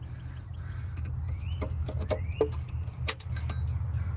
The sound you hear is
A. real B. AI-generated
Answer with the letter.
A